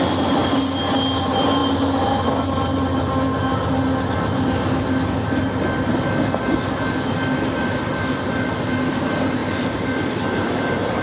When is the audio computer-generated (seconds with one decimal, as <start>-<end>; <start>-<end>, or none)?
9.4-10.5

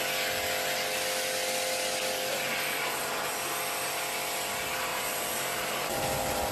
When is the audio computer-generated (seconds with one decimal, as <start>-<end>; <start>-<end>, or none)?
4.9-6.5

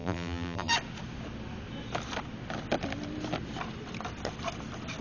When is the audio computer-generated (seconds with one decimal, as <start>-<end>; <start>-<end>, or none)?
0.0-0.7

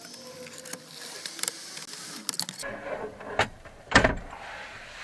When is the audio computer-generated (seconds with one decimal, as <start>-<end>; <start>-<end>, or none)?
none

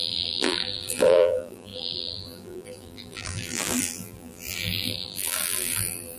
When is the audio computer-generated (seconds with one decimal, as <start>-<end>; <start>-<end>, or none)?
0.0-6.2

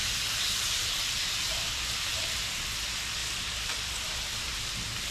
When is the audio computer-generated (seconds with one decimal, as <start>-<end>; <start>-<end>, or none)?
0.0-2.4; 3.2-5.1